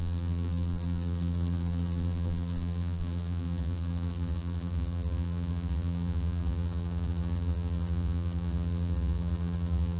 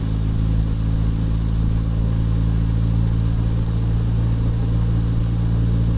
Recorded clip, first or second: second